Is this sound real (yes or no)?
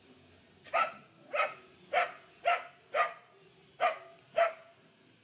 yes